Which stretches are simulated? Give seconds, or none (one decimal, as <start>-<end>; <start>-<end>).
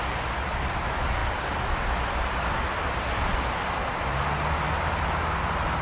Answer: none